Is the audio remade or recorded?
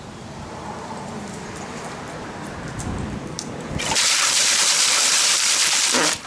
remade